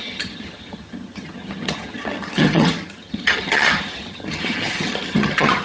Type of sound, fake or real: fake